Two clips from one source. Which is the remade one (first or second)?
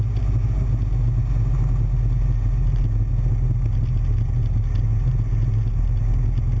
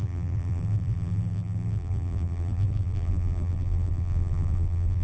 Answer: second